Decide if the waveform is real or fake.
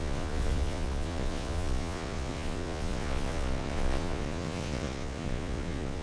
fake